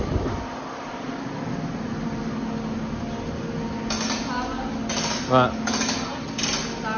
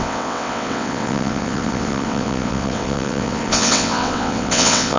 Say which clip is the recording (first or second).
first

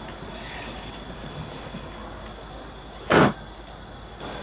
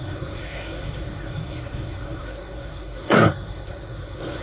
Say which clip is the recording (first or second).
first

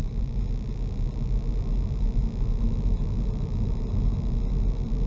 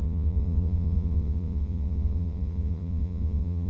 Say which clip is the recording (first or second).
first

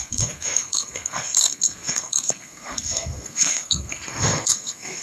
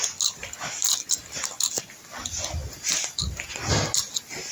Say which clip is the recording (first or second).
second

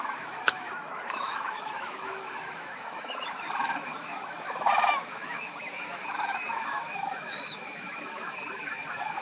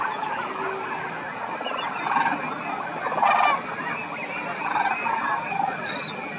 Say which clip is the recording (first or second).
second